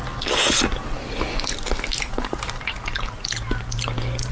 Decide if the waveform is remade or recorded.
recorded